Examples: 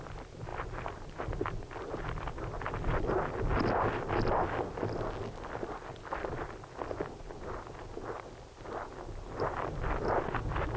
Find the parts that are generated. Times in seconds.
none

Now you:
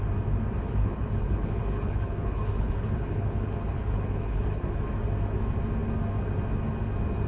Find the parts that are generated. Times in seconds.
0.8-4.8

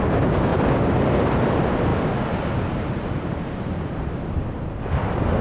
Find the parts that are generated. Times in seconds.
none

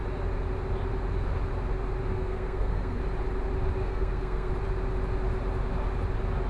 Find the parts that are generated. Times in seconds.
2.1-3.0; 3.8-4.5

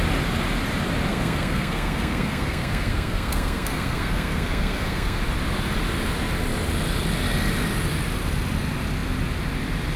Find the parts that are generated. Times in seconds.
1.1-5.2

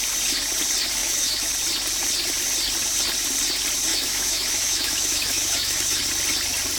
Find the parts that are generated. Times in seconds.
1.0-1.5; 3.9-6.0

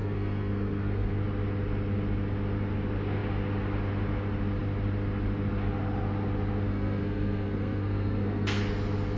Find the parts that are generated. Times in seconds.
0.0-1.2; 6.7-8.6